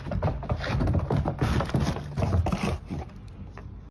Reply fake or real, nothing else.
real